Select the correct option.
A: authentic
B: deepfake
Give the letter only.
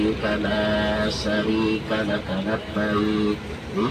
A